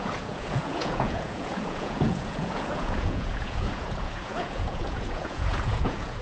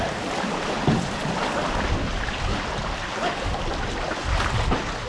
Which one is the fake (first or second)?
first